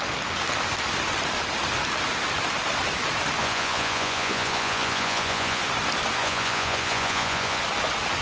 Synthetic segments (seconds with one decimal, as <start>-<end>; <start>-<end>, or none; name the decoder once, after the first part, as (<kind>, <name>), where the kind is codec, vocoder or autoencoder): 3.4-5.6 (vocoder, Vocos); 6.2-7.6